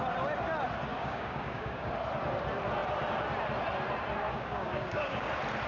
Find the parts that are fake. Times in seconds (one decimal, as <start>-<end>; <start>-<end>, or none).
0.9-1.9; 4.3-5.3